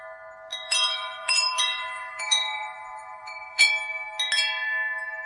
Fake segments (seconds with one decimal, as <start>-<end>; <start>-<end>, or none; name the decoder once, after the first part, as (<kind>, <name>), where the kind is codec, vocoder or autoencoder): 0.5-3.7 (vocoder, Vocos)